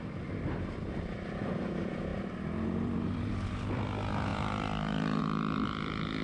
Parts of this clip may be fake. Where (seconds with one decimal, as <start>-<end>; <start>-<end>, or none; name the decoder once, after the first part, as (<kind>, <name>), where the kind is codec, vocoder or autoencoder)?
2.1-3.3 (vocoder, BigVGAN v2); 4.3-5.2